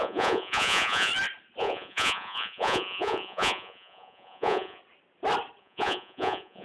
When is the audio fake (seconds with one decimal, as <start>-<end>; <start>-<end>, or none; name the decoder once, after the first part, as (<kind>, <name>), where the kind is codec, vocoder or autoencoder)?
0.0-1.1 (vocoder, Vocos); 1.6-4.8; 5.6-6.6

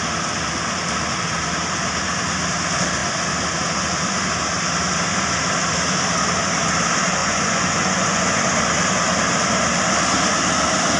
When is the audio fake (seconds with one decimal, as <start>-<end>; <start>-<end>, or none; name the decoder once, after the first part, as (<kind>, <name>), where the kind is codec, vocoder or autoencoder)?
7.2-8.4 (vocoder, Vocos)

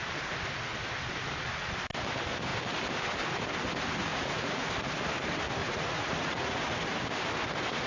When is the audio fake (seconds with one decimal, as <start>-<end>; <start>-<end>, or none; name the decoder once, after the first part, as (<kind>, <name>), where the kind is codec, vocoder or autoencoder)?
4.1-4.7 (vocoder, Vocos); 5.6-6.6